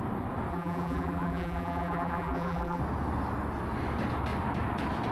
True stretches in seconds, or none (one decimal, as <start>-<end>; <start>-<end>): 0.0-0.5; 2.8-5.1